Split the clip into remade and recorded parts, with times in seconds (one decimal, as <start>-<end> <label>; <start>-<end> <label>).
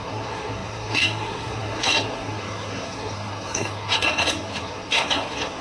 0.0-5.6 remade